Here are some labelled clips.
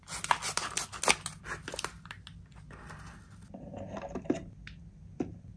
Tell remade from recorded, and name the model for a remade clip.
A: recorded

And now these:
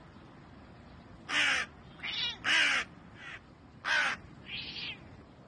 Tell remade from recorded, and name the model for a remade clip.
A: recorded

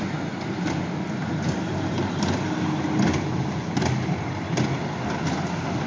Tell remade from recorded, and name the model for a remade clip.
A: recorded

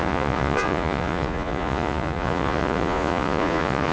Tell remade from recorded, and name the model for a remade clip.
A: remade, vocoder, Vocos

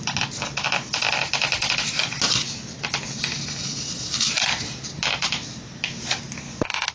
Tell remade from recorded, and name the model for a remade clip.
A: recorded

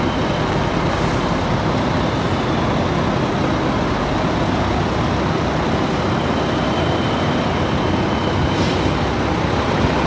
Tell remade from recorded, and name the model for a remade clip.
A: recorded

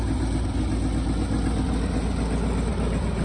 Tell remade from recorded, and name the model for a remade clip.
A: recorded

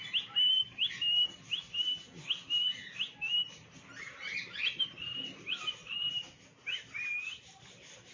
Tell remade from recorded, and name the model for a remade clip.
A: recorded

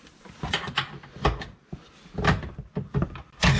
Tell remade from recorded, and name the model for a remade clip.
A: recorded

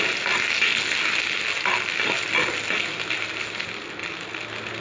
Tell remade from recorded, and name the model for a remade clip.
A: recorded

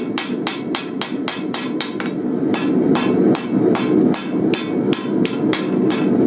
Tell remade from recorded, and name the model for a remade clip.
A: recorded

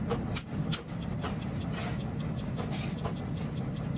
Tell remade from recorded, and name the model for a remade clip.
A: recorded